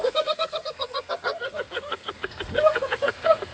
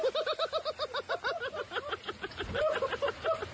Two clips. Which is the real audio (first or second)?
second